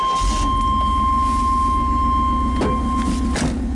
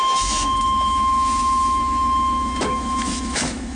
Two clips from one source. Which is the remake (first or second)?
second